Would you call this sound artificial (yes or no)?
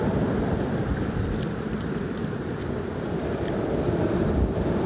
yes